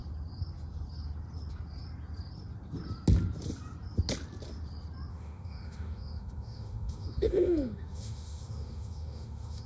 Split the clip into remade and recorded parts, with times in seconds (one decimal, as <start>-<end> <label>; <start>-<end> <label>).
0.0-5.1 recorded; 5.1-9.7 remade